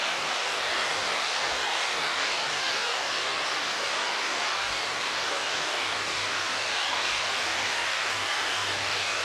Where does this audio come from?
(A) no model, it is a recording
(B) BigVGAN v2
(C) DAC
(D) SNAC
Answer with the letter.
C